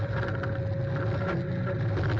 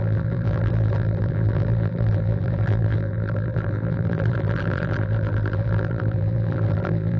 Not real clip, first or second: second